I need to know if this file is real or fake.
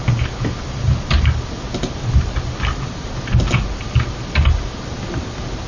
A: real